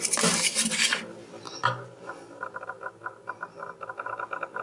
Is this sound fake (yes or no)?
no